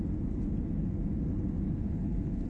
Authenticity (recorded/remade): recorded